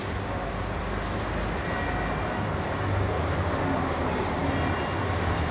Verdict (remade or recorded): recorded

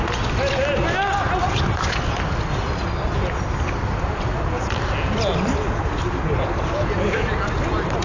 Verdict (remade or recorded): recorded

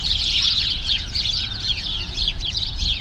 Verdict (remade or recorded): remade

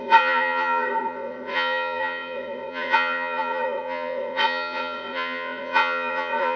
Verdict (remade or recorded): remade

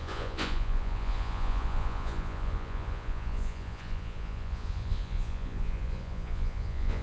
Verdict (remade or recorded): remade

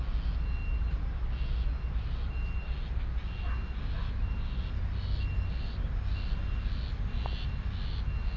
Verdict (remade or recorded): recorded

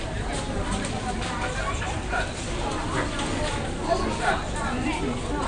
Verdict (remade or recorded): recorded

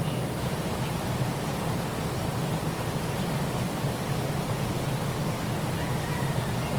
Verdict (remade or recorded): recorded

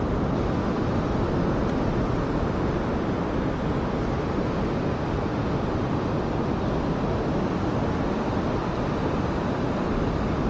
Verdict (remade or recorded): recorded